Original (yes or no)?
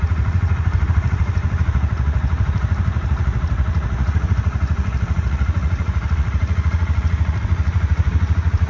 no